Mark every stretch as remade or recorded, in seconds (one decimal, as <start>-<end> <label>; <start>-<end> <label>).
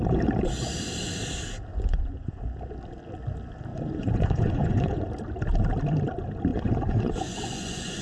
0.0-1.7 recorded; 1.7-2.4 remade; 2.4-3.7 recorded; 3.7-5.1 remade; 5.1-6.5 recorded; 6.5-8.0 remade